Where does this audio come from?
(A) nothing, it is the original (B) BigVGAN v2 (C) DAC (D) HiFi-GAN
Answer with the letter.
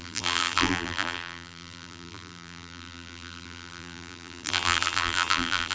B